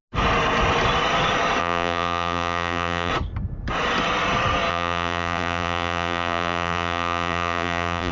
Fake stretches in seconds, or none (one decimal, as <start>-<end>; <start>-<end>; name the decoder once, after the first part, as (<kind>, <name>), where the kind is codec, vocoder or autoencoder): 1.6-3.1 (vocoder, BigVGAN v2); 4.7-8.1